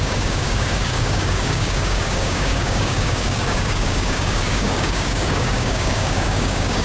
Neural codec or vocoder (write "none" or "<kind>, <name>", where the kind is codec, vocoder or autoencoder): codec, DAC